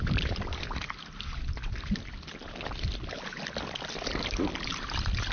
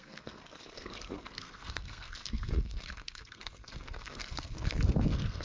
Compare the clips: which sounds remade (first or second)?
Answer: second